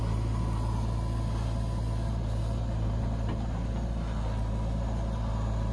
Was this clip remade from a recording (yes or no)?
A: no